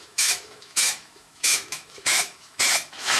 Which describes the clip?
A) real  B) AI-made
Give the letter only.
B